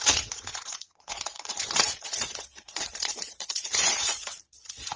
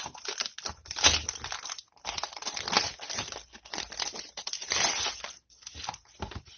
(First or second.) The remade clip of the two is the first